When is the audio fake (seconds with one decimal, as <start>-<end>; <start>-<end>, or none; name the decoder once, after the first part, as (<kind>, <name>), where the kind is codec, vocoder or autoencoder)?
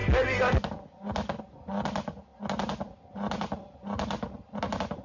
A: none